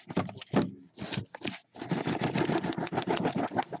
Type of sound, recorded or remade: recorded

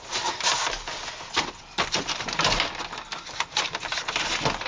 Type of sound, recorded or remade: recorded